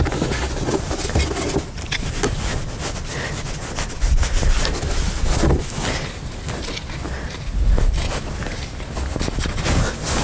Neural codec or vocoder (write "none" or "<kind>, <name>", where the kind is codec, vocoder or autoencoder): none